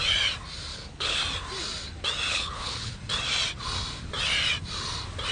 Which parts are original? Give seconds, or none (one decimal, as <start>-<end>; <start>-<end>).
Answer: 0.0-0.7; 1.2-2.3; 3.0-5.3